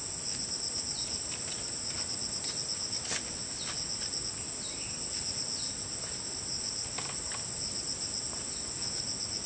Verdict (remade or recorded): recorded